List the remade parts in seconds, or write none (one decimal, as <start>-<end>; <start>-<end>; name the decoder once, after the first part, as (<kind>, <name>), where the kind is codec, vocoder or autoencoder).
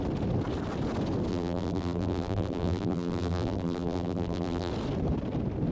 1.3-4.7 (vocoder, BigVGAN v2)